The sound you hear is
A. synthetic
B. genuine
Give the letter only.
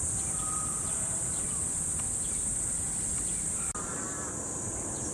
B